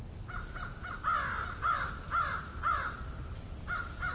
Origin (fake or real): real